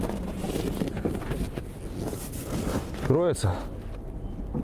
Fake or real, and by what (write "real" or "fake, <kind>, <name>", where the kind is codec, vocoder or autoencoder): real